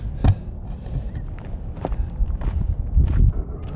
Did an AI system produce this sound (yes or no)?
no